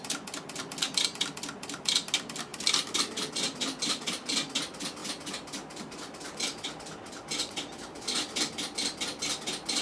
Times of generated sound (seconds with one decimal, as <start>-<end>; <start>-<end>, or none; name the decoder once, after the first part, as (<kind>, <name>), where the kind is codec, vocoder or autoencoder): none